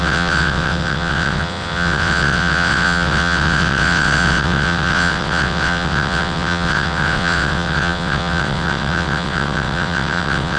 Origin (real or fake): fake